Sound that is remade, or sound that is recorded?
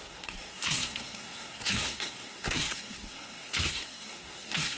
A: remade